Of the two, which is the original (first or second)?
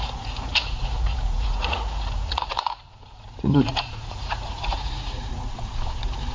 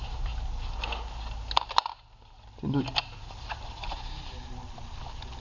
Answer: second